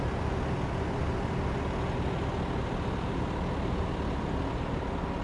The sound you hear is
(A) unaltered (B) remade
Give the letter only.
A